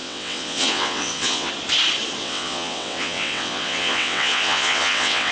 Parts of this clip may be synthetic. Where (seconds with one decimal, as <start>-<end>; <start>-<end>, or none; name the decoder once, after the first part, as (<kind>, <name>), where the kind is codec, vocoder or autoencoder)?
0.0-1.5 (vocoder, WaveNeXt); 2.2-5.3